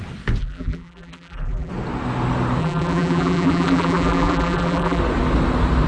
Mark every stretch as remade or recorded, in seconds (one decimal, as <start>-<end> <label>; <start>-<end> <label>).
0.0-0.4 recorded; 0.4-1.7 remade; 1.7-2.6 recorded; 2.6-5.0 remade; 5.0-5.9 recorded